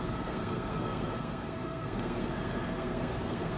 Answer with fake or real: fake